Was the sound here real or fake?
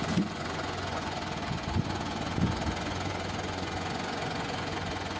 fake